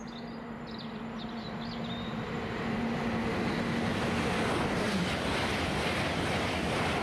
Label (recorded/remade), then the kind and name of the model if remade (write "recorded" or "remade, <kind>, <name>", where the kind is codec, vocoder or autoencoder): recorded